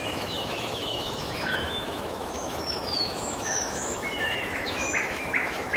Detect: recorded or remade remade